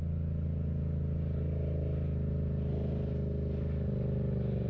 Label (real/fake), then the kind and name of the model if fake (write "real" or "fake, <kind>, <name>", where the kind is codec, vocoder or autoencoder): real